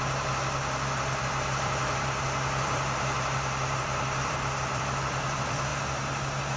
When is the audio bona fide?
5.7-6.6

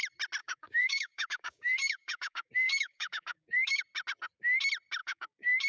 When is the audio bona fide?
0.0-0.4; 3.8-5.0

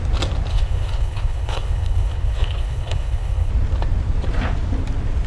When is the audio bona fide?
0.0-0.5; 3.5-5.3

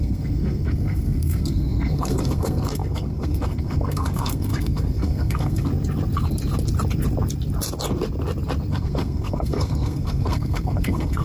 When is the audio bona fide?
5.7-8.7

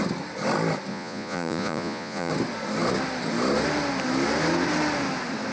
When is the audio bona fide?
0.0-0.9; 2.3-5.5

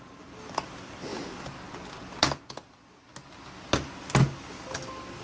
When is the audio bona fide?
0.0-5.2

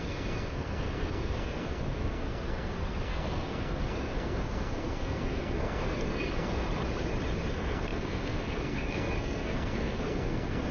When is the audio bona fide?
6.7-7.5